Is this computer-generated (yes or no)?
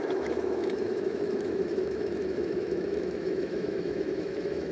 yes